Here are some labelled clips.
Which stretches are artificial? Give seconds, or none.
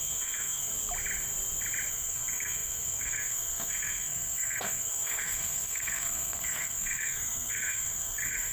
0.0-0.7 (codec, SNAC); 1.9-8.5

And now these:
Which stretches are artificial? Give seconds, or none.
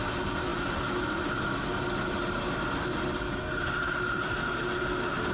none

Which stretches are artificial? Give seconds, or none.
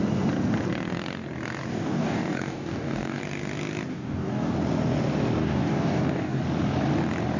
1.7-3.2 (codec, DAC); 3.9-4.5; 5.4-6.4